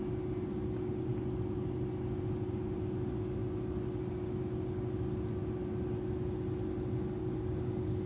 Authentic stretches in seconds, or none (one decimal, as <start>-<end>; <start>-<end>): 0.0-0.5; 1.2-7.2